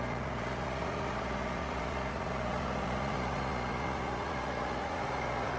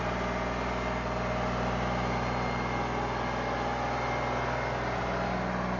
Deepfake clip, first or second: first